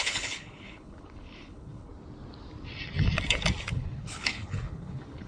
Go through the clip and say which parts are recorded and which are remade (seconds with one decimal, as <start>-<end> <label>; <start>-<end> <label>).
0.0-1.9 remade; 1.9-3.7 recorded; 3.7-5.3 remade